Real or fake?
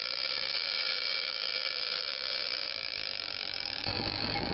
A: fake